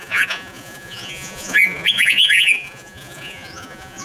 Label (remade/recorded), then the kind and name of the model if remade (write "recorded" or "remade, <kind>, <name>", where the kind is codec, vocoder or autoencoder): remade, vocoder, Vocos